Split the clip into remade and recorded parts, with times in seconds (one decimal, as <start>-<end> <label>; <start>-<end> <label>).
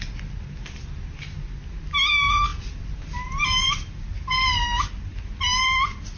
0.0-6.2 recorded